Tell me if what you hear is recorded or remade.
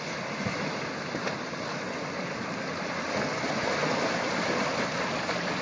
recorded